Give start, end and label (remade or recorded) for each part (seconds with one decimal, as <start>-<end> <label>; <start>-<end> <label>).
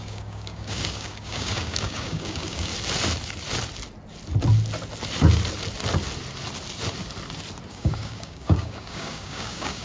0.0-2.7 remade; 2.7-7.7 recorded; 7.7-9.8 remade